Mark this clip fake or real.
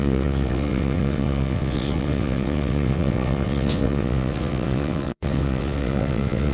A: fake